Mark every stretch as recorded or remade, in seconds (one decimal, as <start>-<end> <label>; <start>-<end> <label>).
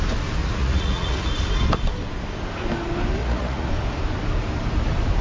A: 0.0-0.4 recorded; 0.4-1.3 remade; 1.3-3.2 recorded; 3.2-3.7 remade; 3.7-5.2 recorded